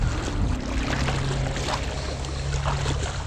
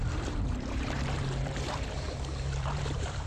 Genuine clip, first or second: first